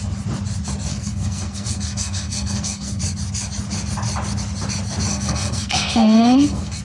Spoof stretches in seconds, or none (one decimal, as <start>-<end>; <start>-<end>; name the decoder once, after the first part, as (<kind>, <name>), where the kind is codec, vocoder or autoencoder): 0.9-3.0 (codec, SNAC); 5.1-6.8